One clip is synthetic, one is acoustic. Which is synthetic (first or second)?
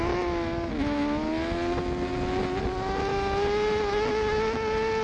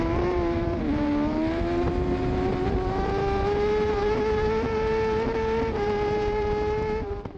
second